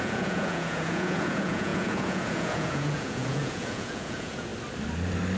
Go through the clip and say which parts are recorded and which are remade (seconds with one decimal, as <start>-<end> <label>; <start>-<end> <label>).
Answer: 0.0-4.5 remade; 4.5-5.4 recorded